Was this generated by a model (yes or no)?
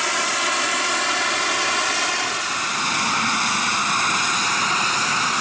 no